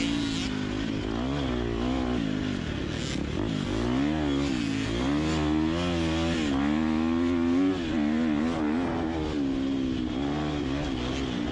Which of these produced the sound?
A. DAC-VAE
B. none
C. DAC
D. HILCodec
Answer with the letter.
B